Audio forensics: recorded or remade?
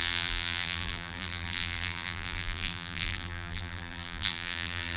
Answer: remade